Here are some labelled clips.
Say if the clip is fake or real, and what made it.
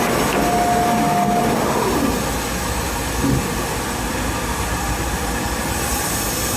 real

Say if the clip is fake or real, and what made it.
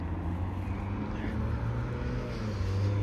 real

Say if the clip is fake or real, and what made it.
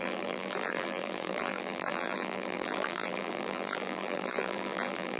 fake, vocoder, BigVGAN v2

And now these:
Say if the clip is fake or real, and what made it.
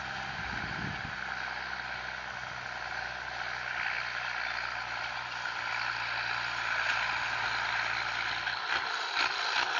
real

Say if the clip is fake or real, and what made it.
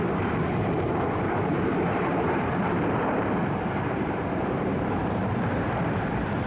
fake, vocoder, BigVGAN v2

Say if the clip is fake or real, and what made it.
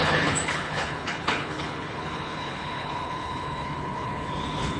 fake, codec, HILCodec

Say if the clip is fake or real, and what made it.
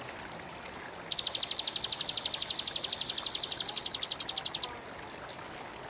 real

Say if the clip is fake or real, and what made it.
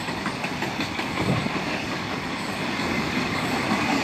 fake, codec, DAC